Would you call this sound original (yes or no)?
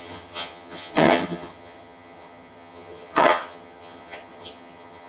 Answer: no